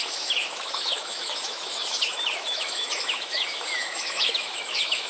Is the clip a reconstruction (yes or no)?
yes